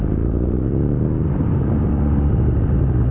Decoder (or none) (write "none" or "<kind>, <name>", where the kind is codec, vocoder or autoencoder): none